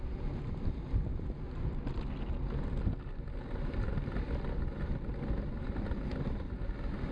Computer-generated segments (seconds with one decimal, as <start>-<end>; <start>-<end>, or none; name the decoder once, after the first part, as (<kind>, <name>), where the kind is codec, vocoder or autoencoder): none